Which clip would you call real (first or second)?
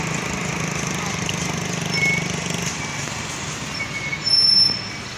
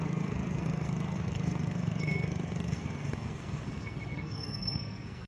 first